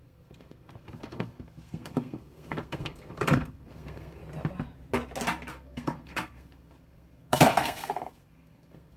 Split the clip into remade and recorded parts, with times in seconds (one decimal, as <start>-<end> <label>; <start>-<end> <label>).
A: 0.0-4.2 remade; 4.2-5.5 recorded; 5.5-9.0 remade